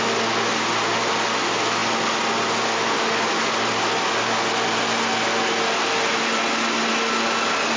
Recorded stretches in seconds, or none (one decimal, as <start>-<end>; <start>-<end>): 0.0-7.8